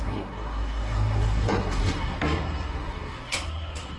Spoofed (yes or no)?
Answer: yes